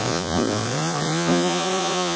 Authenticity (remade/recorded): remade